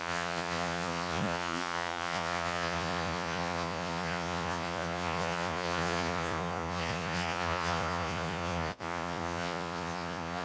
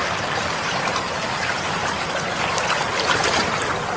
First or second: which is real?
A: second